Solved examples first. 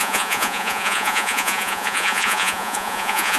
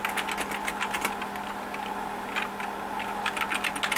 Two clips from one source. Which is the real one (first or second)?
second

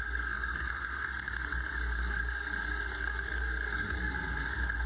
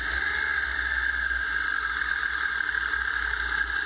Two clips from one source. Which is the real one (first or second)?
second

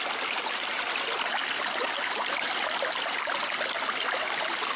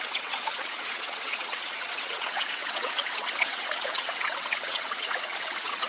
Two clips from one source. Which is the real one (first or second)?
first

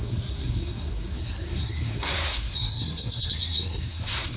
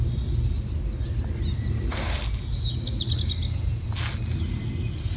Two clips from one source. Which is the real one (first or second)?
second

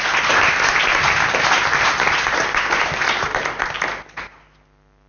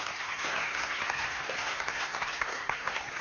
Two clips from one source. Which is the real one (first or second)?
first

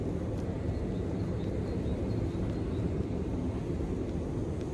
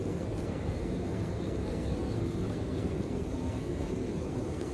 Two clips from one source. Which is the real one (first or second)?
first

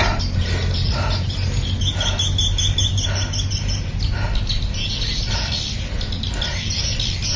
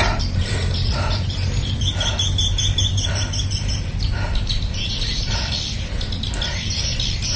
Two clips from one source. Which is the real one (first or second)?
first